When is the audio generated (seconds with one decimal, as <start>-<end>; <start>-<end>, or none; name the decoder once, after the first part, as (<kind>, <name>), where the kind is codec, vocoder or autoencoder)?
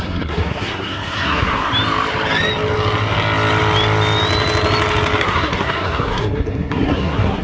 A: 0.0-1.7 (codec, SNAC); 5.2-7.4